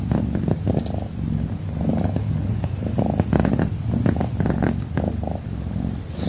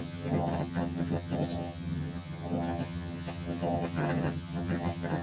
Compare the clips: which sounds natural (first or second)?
first